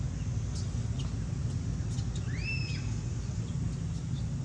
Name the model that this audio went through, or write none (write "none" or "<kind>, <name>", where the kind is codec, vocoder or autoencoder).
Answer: none